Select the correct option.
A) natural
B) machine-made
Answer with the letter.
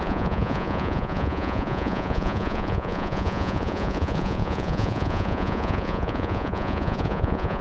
B